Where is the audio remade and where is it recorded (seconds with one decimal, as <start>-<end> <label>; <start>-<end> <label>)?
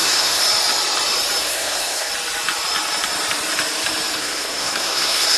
0.0-0.4 remade; 0.4-1.4 recorded; 1.4-2.1 remade; 2.1-4.2 recorded; 4.2-5.4 remade